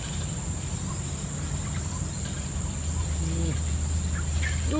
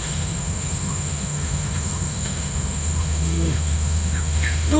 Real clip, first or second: first